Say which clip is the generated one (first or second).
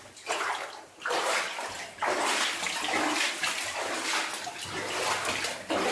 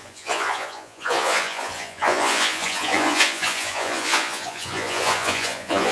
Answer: second